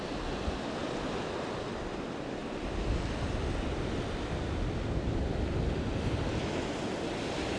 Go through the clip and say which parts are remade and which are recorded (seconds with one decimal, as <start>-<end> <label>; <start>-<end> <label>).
0.0-7.6 recorded